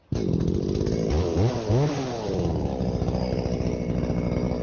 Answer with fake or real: real